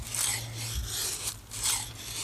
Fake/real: real